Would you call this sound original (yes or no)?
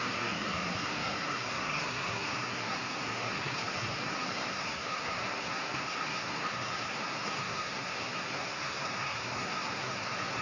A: no